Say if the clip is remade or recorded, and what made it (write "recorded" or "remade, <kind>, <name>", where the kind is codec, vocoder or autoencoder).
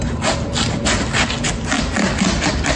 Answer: recorded